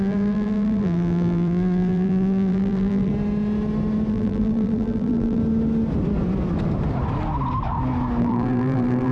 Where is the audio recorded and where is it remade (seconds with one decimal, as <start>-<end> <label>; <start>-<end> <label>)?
0.0-3.1 remade; 3.1-4.1 recorded; 4.1-5.4 remade; 5.4-8.2 recorded; 8.2-9.1 remade